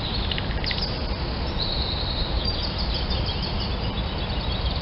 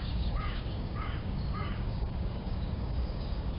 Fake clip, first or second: second